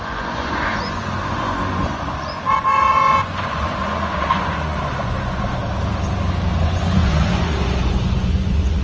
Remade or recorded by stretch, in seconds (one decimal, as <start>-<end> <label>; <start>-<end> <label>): 0.0-5.6 remade; 5.6-6.6 recorded; 6.6-8.8 remade